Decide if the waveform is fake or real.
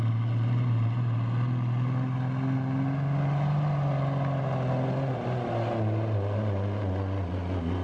real